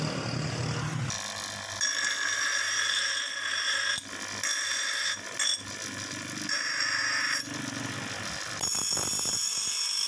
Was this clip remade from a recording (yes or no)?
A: no